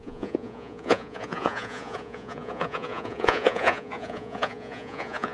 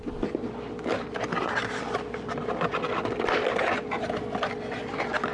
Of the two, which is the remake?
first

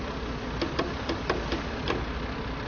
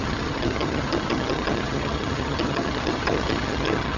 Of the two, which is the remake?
second